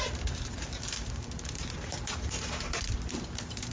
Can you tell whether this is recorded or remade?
remade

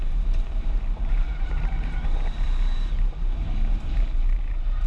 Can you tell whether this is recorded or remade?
remade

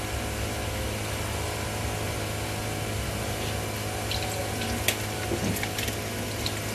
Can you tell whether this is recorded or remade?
recorded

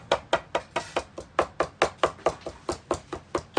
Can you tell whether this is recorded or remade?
recorded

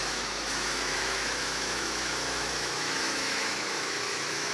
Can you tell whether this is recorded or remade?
remade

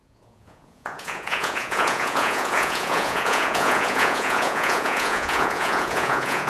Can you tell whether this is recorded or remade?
remade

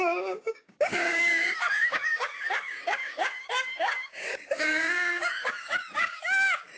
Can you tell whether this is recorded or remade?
remade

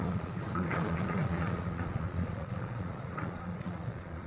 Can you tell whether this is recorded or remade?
remade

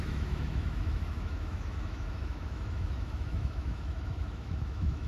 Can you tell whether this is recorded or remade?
remade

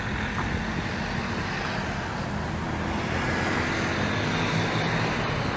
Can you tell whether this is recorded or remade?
recorded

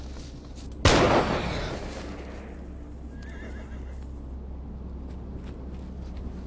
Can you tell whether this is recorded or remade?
recorded